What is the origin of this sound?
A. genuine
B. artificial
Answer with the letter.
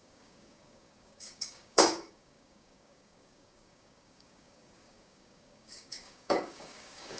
B